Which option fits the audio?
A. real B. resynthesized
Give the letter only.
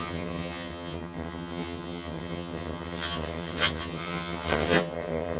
B